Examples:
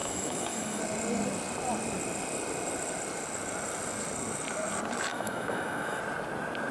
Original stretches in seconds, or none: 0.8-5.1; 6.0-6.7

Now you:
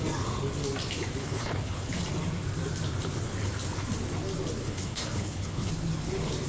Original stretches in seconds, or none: 0.0-1.2; 2.0-4.6; 5.7-6.5

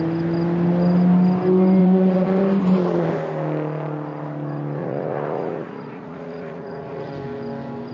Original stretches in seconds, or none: 0.0-1.8; 2.4-4.8; 7.1-7.9

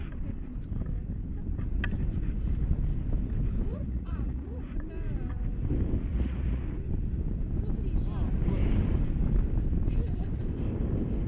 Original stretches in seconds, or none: 0.0-3.7; 4.6-6.1; 6.6-11.3